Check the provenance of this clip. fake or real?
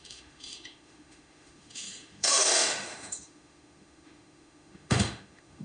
fake